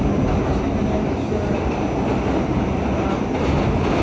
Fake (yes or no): no